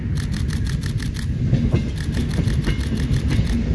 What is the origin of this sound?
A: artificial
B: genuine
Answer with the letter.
B